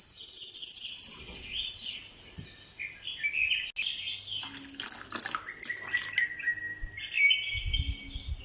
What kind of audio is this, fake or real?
real